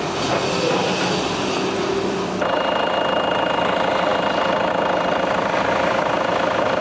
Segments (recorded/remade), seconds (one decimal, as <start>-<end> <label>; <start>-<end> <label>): 0.0-6.8 recorded